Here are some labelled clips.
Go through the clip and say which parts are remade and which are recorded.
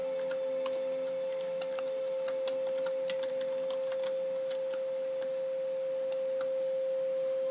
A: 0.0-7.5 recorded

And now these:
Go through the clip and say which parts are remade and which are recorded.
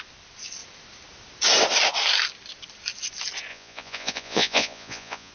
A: 0.0-3.5 recorded; 3.5-5.3 remade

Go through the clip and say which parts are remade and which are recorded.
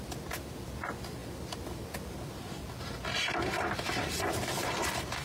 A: 0.0-5.2 recorded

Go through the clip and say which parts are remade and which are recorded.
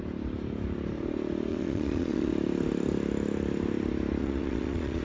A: 0.0-1.5 recorded; 1.5-2.3 remade; 2.3-4.2 recorded; 4.2-5.0 remade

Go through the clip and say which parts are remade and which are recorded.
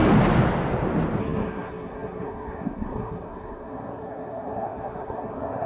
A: 0.0-1.2 recorded; 1.2-5.7 remade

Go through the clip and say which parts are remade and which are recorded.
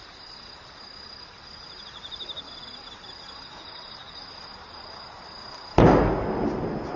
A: 0.0-7.0 recorded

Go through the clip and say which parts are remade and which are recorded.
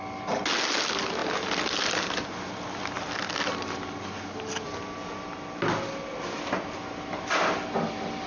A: 0.0-8.3 recorded